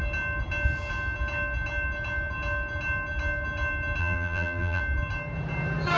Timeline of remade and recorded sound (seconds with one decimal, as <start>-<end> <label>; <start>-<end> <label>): 0.0-4.0 recorded; 4.0-4.8 remade; 4.8-6.0 recorded